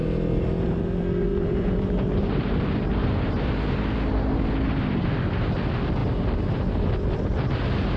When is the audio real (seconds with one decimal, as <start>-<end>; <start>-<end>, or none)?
0.0-1.3; 3.5-8.0